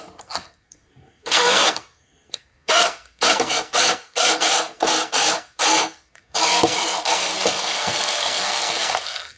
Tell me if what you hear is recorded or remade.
remade